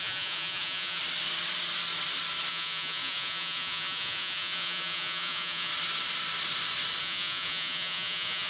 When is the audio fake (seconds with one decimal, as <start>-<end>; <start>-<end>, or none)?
0.0-1.0; 2.5-5.7; 7.0-8.5